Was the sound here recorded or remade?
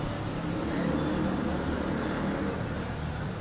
recorded